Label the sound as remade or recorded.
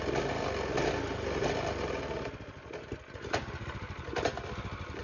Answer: recorded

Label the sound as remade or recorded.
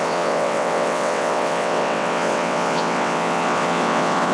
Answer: remade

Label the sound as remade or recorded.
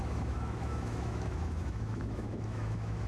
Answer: remade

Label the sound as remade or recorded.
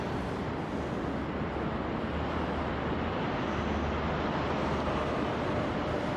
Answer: recorded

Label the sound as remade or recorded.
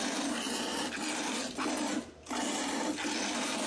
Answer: recorded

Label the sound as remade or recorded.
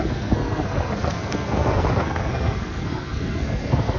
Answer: remade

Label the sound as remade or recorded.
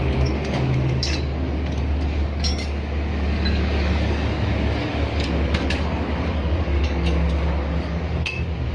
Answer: remade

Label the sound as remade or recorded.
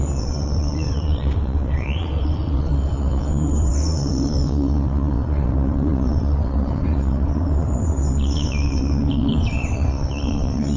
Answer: remade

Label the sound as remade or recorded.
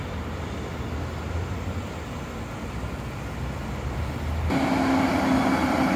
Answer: recorded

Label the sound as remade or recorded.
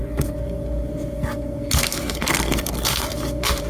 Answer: remade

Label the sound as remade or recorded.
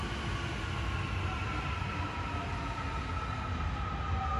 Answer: recorded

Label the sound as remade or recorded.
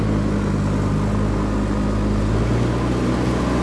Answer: recorded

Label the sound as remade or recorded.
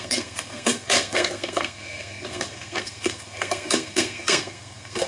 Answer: remade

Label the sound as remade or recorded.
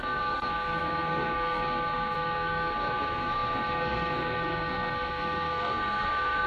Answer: remade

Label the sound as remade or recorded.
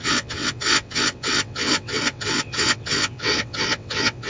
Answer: remade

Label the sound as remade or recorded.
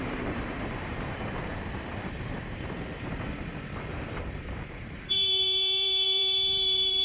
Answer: remade